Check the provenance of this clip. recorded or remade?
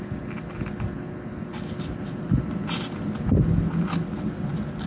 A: recorded